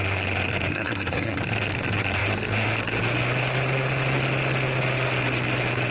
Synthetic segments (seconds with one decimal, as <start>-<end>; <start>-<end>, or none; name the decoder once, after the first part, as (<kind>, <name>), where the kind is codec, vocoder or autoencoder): 0.7-1.4 (codec, SNAC)